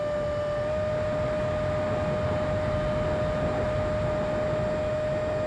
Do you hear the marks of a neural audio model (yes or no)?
no